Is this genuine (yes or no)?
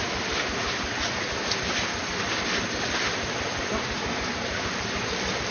yes